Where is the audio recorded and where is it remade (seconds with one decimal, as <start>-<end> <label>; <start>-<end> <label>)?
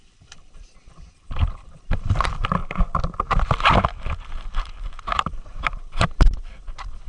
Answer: 0.0-2.6 remade; 2.6-4.3 recorded; 4.3-7.1 remade